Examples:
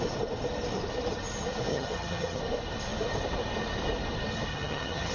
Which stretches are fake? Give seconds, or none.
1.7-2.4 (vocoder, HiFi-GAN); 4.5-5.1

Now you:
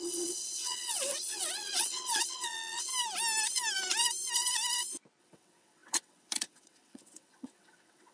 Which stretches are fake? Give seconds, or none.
0.0-2.9 (vocoder, WaveNeXt); 5.2-8.1

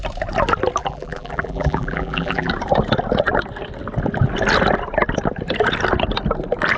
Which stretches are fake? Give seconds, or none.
0.8-2.5 (vocoder, BigVGAN v2)

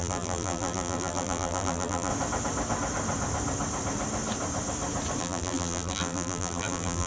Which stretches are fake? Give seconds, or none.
0.0-2.1 (vocoder, BigVGAN v2); 5.2-7.1